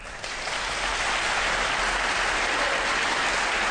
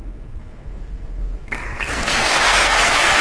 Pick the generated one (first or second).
second